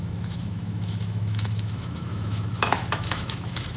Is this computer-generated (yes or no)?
yes